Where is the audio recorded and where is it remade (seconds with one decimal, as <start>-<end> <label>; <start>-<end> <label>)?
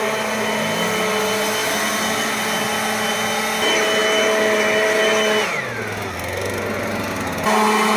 0.0-8.0 recorded